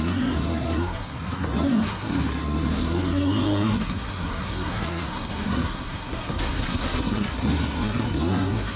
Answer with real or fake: fake